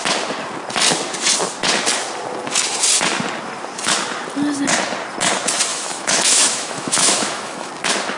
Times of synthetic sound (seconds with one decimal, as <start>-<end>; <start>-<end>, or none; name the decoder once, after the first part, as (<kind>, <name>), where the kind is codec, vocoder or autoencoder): 5.7-7.7 (autoencoder, DAC-VAE)